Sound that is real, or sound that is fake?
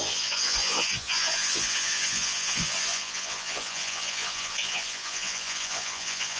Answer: fake